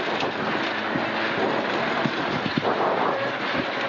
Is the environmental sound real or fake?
real